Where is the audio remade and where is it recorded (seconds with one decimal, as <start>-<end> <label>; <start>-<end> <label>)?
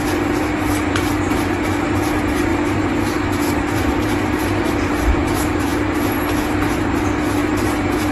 0.0-8.1 remade